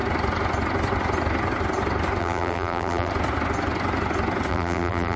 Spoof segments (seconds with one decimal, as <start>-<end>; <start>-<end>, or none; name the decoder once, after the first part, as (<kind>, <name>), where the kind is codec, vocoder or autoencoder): 2.2-3.1 (vocoder, BigVGAN v2); 4.5-5.2